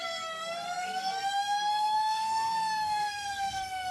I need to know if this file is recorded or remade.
remade